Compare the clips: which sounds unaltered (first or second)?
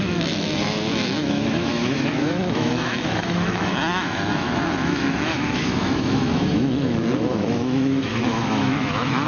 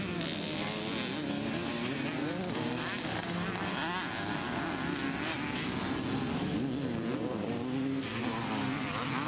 second